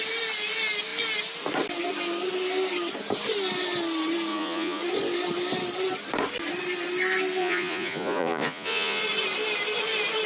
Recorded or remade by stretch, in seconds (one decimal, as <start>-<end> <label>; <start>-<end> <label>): 0.0-4.3 recorded; 4.3-4.8 remade; 4.8-7.4 recorded; 7.4-9.0 remade; 9.0-10.3 recorded